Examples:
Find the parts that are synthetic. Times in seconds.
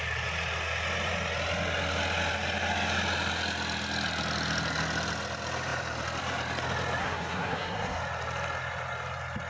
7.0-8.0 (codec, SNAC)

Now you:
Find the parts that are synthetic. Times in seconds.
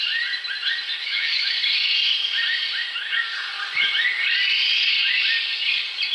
1.0-1.5 (autoencoder, DAC-VAE)